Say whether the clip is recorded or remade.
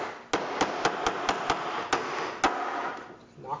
recorded